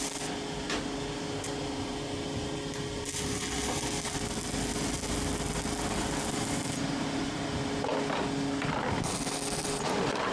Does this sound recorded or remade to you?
recorded